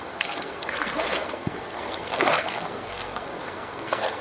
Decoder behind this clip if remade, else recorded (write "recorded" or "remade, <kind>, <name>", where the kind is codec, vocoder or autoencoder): remade, codec, SNAC